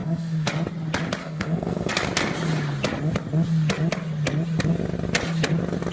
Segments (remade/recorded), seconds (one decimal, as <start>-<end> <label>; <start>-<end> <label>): 0.0-0.5 remade; 0.5-1.2 recorded; 1.2-1.9 remade; 1.9-5.9 recorded